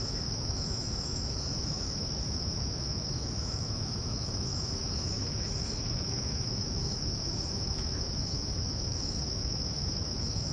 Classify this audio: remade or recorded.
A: remade